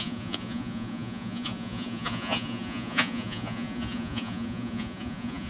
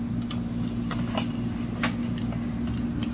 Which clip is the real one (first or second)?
second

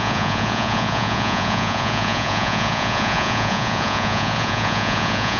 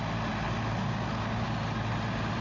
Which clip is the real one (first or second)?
second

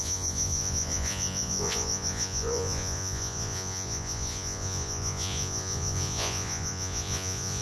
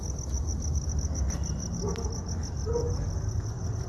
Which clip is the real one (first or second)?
second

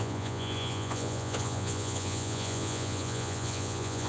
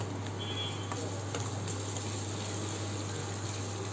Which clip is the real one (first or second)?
second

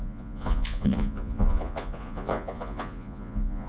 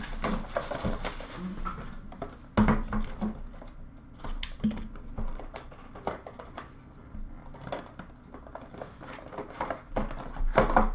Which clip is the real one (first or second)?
second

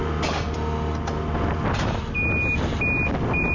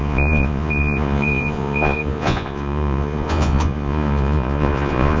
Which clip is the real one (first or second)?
first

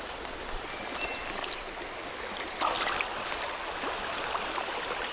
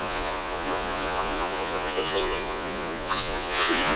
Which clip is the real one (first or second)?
first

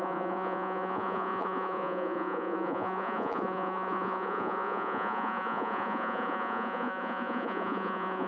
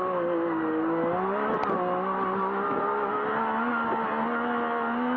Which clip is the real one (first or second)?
second